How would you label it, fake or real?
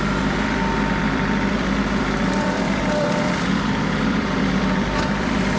fake